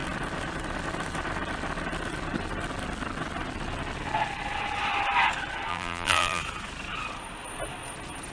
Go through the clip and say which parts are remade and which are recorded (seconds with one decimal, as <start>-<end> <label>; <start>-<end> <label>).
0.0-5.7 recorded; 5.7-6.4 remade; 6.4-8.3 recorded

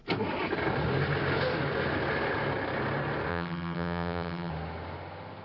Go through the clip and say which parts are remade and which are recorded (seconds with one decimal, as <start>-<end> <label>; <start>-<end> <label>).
0.0-3.3 recorded; 3.3-4.5 remade; 4.5-5.4 recorded

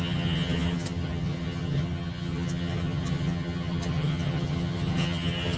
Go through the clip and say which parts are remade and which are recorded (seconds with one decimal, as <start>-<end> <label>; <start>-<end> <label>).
0.0-5.6 remade

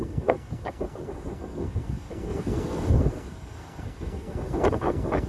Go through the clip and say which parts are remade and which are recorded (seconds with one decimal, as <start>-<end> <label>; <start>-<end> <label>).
0.0-5.3 remade

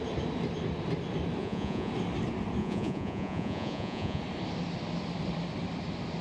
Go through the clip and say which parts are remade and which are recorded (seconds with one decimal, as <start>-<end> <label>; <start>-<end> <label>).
0.0-1.4 recorded; 1.4-1.9 remade; 1.9-2.6 recorded; 2.6-4.2 remade; 4.2-6.2 recorded